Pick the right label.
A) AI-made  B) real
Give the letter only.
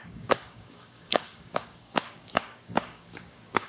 A